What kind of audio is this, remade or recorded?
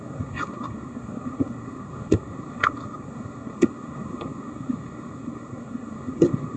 remade